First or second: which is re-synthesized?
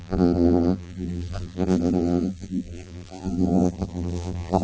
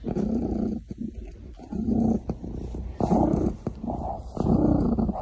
first